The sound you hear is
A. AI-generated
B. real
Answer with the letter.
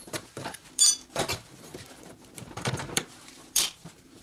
A